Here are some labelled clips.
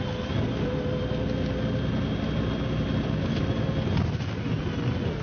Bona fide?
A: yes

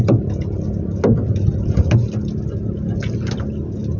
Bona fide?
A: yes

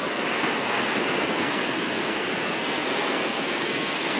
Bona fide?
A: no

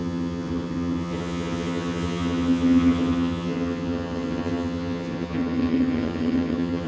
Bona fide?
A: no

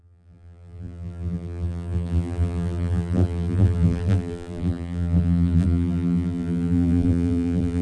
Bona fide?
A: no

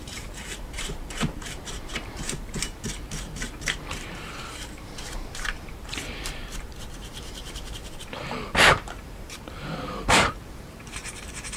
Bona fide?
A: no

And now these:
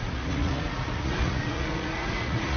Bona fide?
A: no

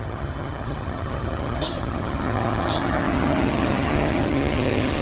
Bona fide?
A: no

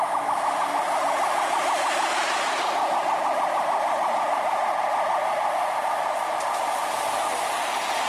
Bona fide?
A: yes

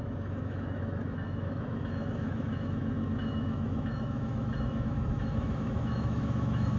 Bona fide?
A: no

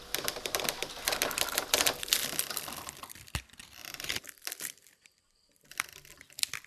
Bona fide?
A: no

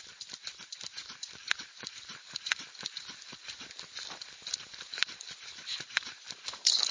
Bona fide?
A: no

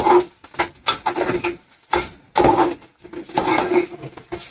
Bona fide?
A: yes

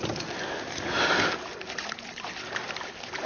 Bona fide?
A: yes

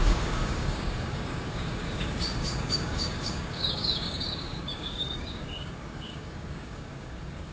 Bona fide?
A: no